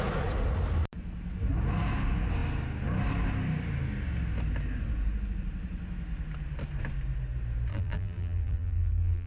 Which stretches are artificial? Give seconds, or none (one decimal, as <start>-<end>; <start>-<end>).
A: 7.7-9.3